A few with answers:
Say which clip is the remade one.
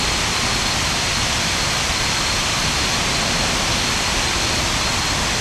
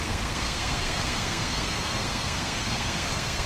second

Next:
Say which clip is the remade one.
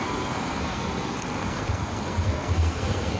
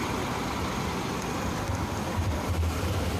first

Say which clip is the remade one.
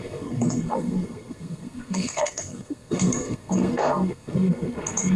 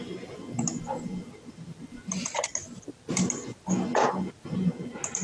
first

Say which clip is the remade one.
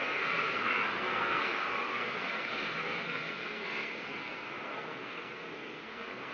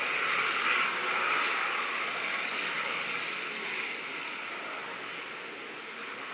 first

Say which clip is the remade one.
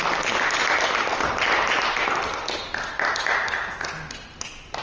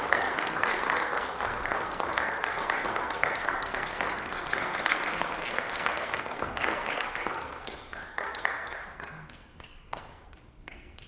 second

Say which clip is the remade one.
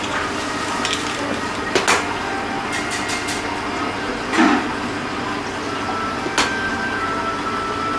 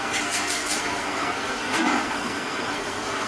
second